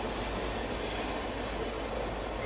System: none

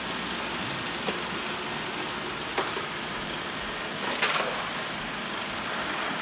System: none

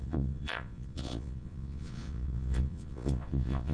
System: vocoder, Vocos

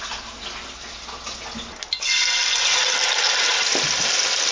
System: none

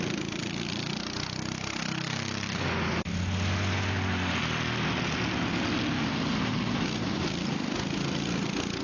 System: none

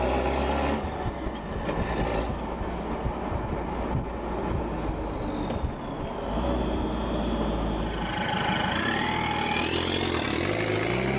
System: none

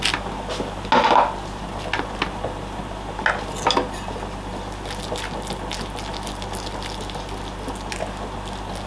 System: none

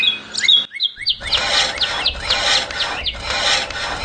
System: none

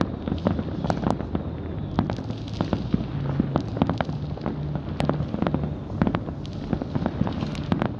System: none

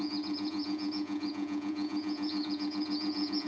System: vocoder, Vocos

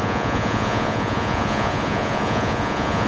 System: vocoder, Vocos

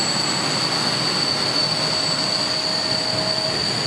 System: none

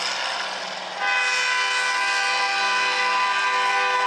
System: none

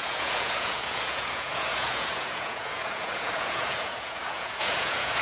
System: vocoder, Vocos